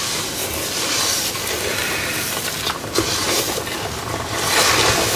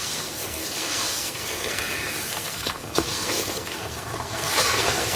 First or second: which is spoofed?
second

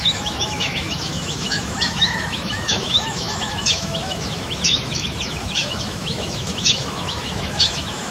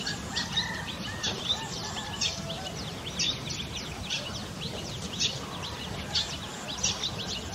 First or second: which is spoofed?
first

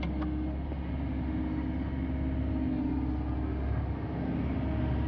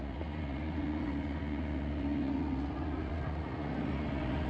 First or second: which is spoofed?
second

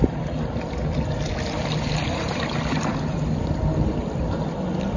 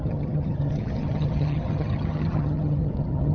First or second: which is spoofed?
second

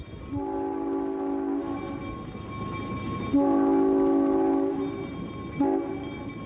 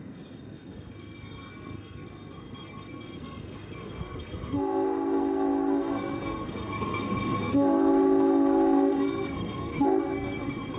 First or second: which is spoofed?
second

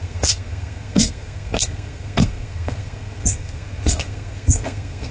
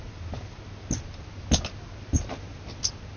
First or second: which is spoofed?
first